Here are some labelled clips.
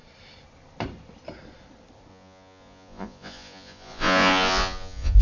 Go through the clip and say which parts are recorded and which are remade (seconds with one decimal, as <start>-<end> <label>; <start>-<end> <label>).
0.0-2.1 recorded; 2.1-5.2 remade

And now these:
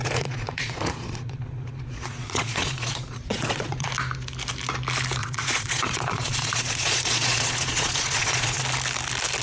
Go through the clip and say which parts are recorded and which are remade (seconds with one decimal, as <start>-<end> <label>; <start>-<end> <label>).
0.0-3.9 remade; 3.9-5.2 recorded; 5.2-8.6 remade; 8.6-9.4 recorded

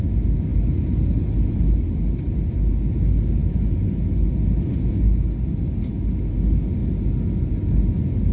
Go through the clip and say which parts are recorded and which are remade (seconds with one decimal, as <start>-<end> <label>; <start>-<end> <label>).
0.0-8.3 recorded